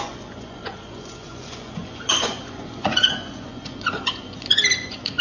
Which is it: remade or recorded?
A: remade